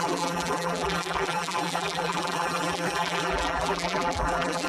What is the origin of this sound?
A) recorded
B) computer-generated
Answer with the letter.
B